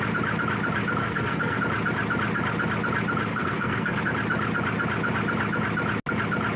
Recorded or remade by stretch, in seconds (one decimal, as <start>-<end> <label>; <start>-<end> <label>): 0.0-1.0 recorded; 1.0-1.6 remade; 1.6-3.3 recorded; 3.3-4.0 remade; 4.0-6.6 recorded